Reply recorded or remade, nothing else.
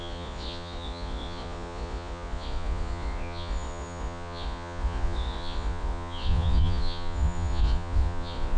remade